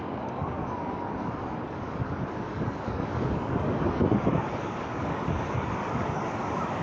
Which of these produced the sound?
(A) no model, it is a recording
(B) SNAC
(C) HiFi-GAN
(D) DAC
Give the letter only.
D